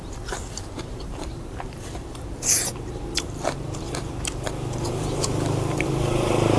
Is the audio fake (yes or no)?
yes